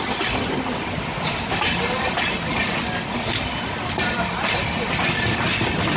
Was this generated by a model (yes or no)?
no